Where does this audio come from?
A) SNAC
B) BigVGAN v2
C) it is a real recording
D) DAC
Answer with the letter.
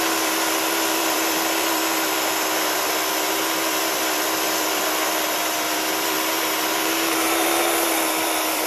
B